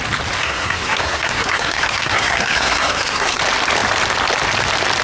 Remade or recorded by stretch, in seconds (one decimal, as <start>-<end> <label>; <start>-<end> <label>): 0.0-0.4 recorded; 0.4-3.4 remade; 3.4-5.0 recorded